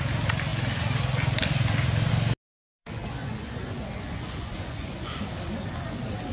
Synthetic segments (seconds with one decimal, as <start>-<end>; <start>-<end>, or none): 2.8-5.2